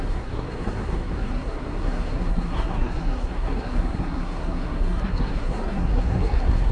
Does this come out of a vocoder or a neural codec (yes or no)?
yes